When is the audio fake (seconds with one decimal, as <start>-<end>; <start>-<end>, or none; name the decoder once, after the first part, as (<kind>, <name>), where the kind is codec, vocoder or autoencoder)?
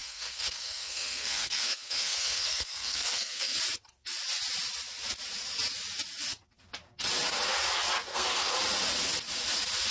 0.0-3.6 (codec, SNAC); 8.1-8.6